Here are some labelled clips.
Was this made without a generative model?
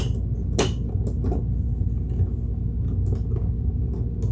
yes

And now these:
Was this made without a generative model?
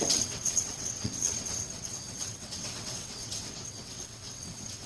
no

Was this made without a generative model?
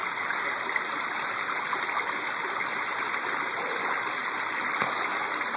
yes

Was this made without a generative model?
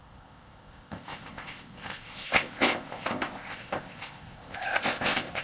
no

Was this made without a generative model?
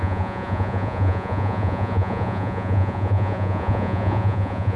no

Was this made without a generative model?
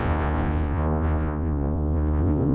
no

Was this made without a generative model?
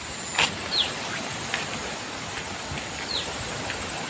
yes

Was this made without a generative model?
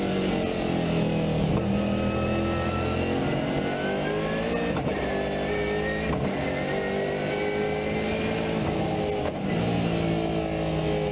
yes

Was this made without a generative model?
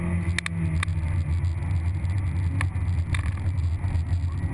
yes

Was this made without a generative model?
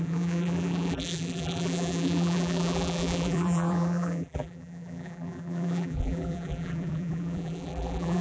no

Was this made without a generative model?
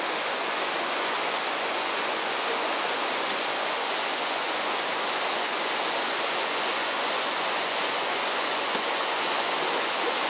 no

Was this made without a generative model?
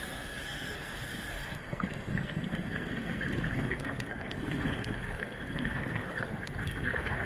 no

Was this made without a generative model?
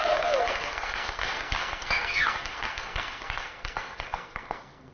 no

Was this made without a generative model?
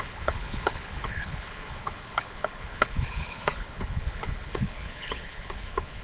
no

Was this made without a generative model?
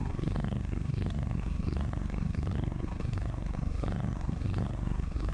no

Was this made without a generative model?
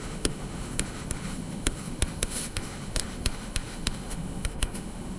no